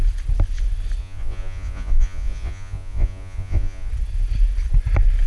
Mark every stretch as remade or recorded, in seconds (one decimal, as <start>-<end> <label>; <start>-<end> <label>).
0.0-1.0 recorded; 1.0-3.9 remade; 3.9-5.3 recorded